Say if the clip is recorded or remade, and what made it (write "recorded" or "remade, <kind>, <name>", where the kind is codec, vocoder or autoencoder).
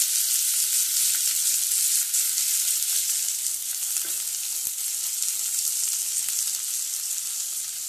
recorded